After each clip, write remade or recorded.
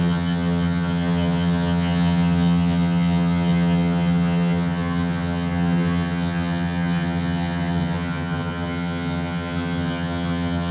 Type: remade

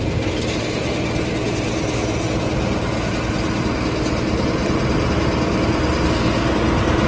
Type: recorded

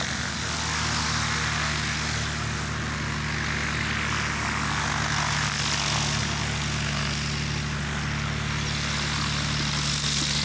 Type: recorded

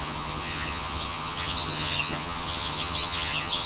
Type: remade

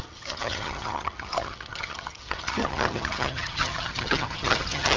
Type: remade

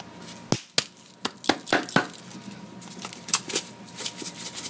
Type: recorded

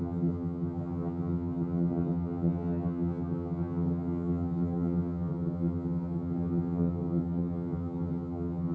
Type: remade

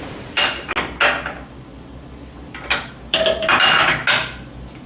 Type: recorded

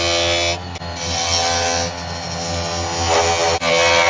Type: recorded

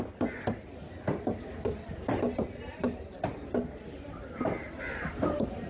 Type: recorded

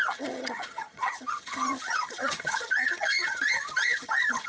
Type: remade